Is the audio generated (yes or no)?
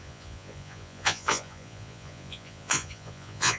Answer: yes